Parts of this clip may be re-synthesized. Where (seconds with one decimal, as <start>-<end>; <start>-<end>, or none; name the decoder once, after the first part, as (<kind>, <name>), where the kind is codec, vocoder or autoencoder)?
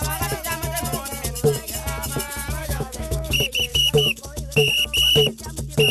2.6-3.3 (autoencoder, DAC-VAE); 3.7-4.7